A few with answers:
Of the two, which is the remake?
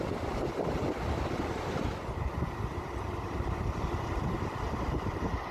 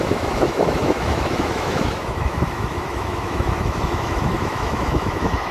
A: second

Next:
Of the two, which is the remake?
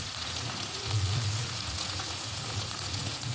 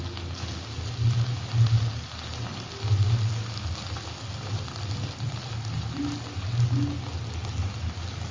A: first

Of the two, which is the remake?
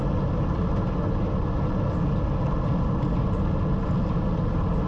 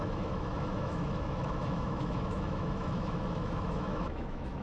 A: second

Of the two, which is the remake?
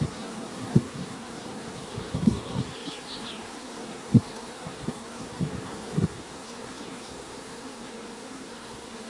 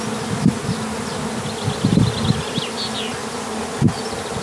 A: first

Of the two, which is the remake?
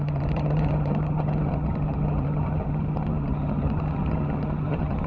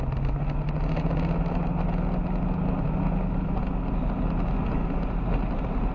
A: first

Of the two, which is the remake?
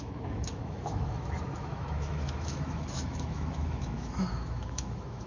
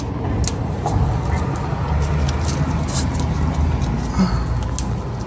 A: first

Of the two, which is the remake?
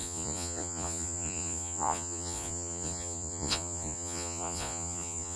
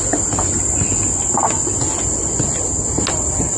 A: first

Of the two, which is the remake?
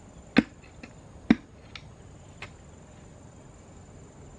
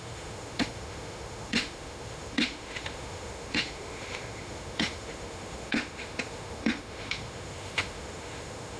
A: second